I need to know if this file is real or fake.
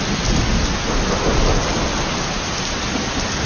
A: real